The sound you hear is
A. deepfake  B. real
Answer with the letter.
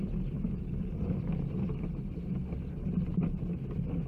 B